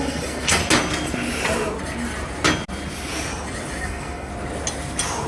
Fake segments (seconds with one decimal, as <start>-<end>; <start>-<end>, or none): 0.0-0.6; 3.8-4.3